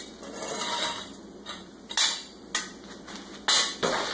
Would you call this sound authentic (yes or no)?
yes